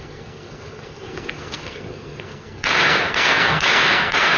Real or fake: fake